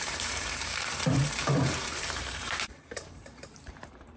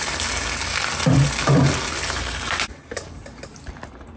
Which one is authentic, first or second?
second